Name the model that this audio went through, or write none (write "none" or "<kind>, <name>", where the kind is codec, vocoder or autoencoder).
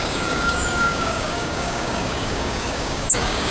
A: codec, DAC